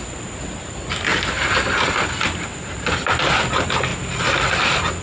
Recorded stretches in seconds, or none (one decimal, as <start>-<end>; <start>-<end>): 0.0-1.1; 3.3-3.9; 4.5-5.0